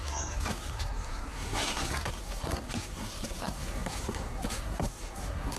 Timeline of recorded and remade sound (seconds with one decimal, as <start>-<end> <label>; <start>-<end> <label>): 0.0-5.6 remade

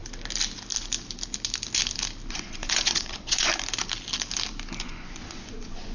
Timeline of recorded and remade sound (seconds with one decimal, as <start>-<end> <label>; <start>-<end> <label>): 0.0-2.3 recorded; 2.3-3.5 remade; 3.5-4.8 recorded; 4.8-5.9 remade